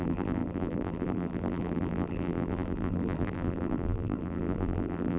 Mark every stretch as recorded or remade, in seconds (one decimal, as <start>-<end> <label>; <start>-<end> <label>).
0.0-5.2 remade